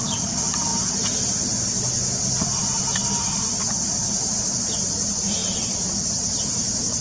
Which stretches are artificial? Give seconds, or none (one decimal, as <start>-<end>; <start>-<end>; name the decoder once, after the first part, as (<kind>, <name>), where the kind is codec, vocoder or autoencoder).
none